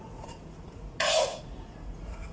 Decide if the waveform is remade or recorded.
remade